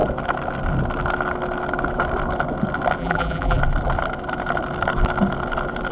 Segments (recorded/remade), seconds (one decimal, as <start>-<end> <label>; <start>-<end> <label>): 0.0-3.0 recorded; 3.0-3.6 remade; 3.6-5.9 recorded